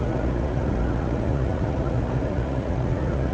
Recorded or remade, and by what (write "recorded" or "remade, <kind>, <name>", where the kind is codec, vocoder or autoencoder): remade, vocoder, Vocos